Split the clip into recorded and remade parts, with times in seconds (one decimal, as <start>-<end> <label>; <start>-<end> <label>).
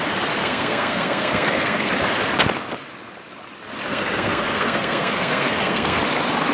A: 0.0-0.4 recorded; 0.4-1.9 remade; 1.9-3.9 recorded; 3.9-6.0 remade; 6.0-6.5 recorded